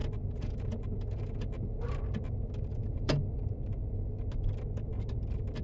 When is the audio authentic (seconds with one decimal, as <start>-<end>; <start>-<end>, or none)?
1.8-2.7; 3.4-5.6